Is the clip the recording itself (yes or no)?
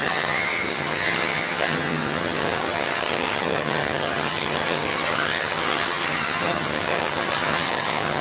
no